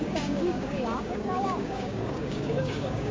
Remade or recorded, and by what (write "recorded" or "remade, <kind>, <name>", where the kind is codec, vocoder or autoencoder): remade, codec, DAC